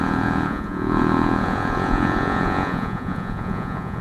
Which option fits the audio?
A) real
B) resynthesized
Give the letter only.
B